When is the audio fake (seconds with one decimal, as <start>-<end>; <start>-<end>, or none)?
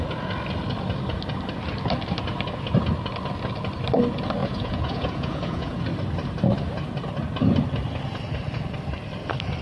4.4-5.8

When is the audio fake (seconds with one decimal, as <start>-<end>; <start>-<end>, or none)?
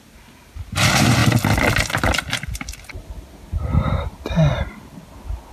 none